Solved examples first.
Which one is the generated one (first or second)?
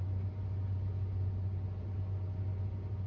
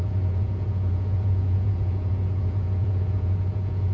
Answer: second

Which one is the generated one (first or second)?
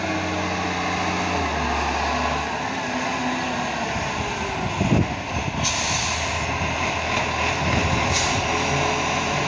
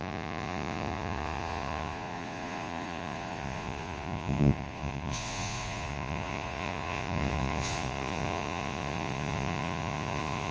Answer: second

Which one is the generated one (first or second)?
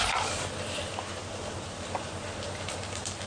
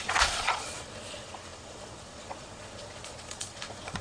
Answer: second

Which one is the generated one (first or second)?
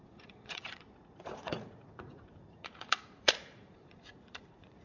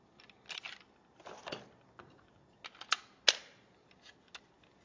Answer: first